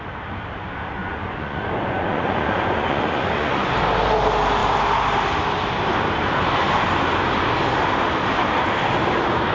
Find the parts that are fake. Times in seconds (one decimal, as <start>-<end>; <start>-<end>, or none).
1.0-3.7